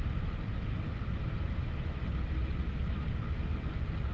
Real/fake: real